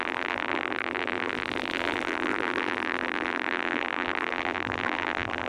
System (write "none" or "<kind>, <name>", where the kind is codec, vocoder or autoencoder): vocoder, BigVGAN v2